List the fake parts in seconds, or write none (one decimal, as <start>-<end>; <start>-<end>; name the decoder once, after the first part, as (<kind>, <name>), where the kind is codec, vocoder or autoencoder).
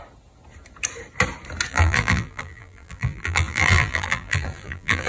1.7-5.1 (vocoder, BigVGAN v2)